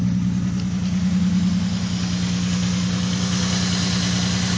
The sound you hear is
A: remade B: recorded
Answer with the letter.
B